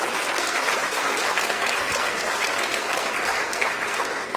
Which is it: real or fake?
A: fake